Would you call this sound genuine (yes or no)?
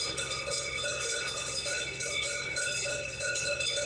no